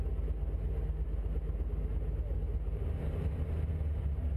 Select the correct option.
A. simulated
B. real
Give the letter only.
B